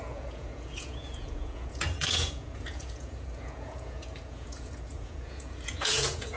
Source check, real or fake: fake